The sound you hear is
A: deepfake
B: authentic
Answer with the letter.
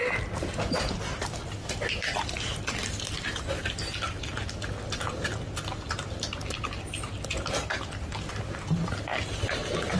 B